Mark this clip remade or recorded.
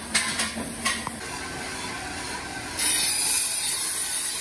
recorded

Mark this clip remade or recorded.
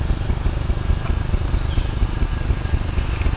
recorded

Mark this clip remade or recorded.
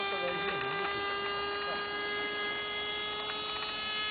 recorded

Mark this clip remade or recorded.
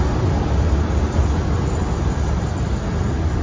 recorded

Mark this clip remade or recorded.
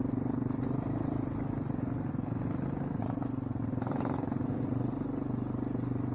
recorded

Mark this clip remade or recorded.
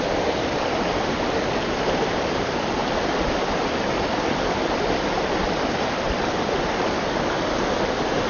remade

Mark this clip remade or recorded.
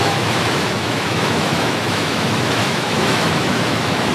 remade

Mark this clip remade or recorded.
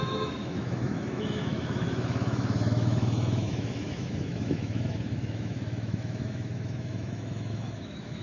remade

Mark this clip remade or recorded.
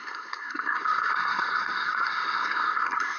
remade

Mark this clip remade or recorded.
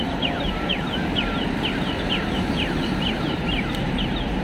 remade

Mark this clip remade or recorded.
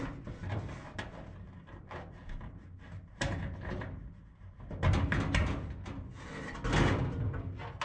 recorded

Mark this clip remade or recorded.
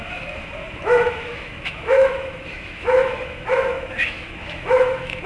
remade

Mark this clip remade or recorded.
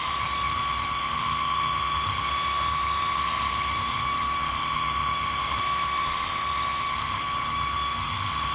remade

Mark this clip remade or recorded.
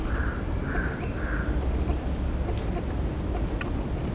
recorded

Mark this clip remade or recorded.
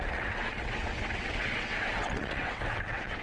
remade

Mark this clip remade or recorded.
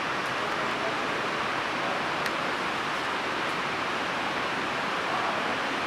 recorded